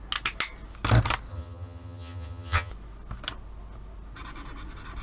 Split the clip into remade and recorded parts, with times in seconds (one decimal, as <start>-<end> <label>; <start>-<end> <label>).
0.0-1.3 recorded; 1.3-2.7 remade; 2.7-5.0 recorded